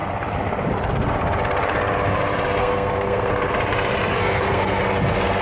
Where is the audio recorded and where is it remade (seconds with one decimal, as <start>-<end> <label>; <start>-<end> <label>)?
0.0-2.6 recorded; 2.6-3.3 remade; 3.3-4.1 recorded; 4.1-4.8 remade; 4.8-5.4 recorded